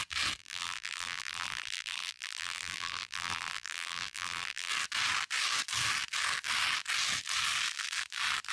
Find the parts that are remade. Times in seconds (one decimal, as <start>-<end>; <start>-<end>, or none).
0.4-4.7